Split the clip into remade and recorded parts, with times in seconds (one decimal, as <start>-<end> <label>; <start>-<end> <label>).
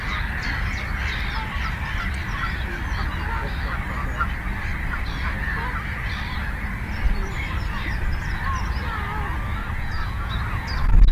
0.0-9.6 recorded; 9.6-10.3 remade; 10.3-11.1 recorded